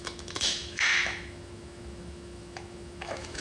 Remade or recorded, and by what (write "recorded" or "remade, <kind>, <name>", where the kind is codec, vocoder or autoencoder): remade, autoencoder, DAC-VAE